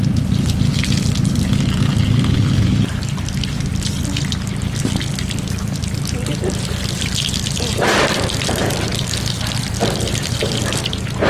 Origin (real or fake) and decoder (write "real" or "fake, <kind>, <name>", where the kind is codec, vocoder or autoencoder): real